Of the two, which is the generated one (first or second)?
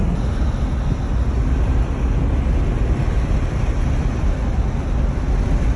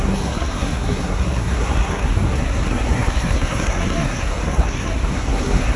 second